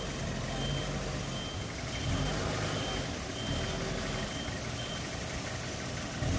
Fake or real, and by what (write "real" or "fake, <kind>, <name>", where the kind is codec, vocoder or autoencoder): real